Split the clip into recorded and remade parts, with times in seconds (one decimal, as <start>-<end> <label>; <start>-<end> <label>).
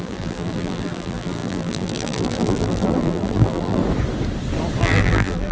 0.0-3.8 remade; 3.8-4.8 recorded; 4.8-5.5 remade